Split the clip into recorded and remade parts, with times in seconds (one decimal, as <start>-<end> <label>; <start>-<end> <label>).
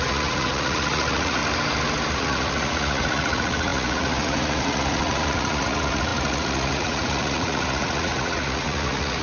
0.0-1.4 remade; 1.4-2.1 recorded; 2.1-9.2 remade